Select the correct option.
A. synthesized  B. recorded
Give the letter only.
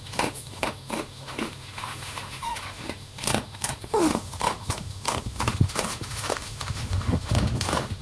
A